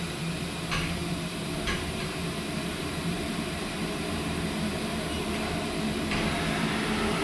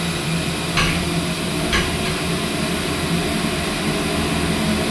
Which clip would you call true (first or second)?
second